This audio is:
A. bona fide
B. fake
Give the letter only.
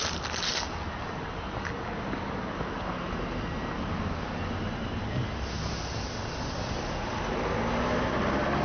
A